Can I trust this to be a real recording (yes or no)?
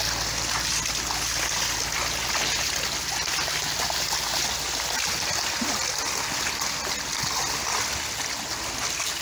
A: yes